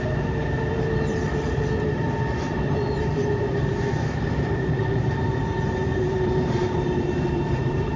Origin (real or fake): fake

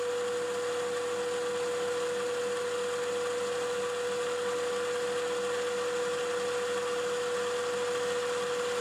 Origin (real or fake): real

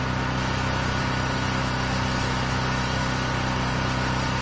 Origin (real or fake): real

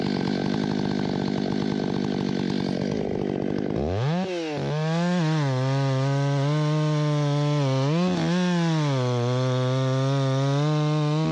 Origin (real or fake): real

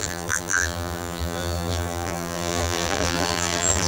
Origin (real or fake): fake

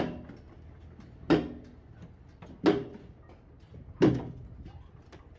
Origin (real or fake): real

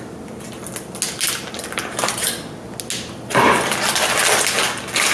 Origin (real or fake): real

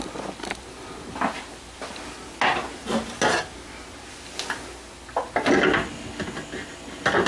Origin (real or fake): real